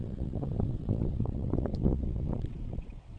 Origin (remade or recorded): remade